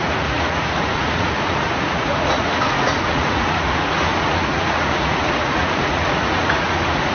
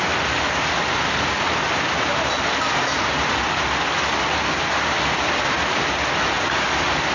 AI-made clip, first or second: first